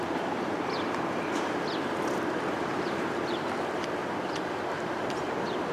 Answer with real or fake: fake